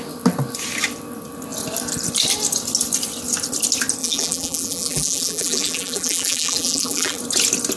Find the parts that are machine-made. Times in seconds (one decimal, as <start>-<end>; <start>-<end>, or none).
4.0-7.2